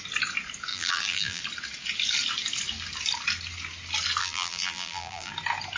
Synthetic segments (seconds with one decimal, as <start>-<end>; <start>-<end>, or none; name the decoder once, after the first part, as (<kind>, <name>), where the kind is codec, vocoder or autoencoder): 0.7-1.4 (vocoder, BigVGAN v2); 4.2-5.3